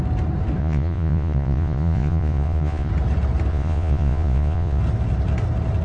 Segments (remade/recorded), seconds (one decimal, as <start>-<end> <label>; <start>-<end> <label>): 0.0-0.6 recorded; 0.6-2.9 remade; 2.9-3.5 recorded; 3.5-4.8 remade; 4.8-5.8 recorded